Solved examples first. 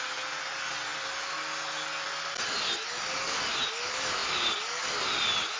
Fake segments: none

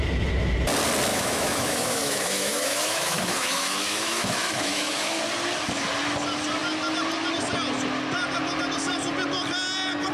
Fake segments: 1.1-5.2 (autoencoder, DAC-VAE)

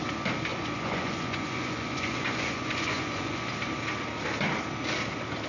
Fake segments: 0.5-3.5 (vocoder, Vocos)

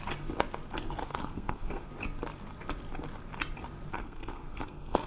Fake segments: 1.0-1.9 (codec, SNAC); 3.9-5.1

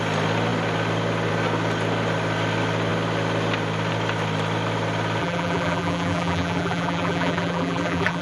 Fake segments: 5.2-8.2 (vocoder, BigVGAN v2)

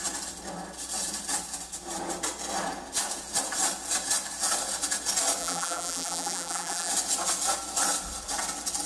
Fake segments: 5.4-6.9 (vocoder, BigVGAN v2)

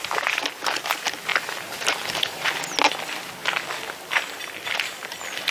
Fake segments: 1.3-2.5 (vocoder, BigVGAN v2)

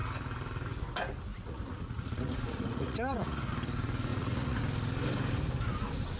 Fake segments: 1.3-3.5 (vocoder, Vocos); 4.1-4.6